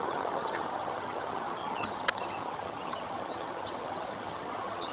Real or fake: fake